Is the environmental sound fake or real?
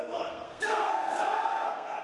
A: fake